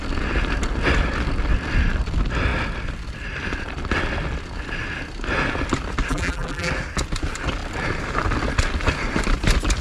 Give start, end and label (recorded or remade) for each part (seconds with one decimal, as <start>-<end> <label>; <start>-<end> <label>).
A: 0.0-6.1 recorded; 6.1-6.7 remade; 6.7-9.8 recorded